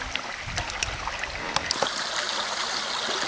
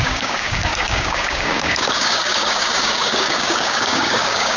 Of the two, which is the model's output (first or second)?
second